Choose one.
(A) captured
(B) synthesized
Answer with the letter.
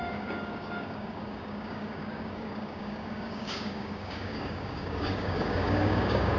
B